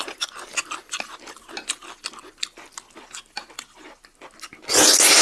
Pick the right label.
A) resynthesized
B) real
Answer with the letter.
B